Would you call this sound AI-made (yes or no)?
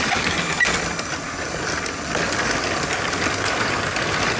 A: no